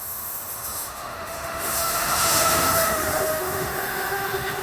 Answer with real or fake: fake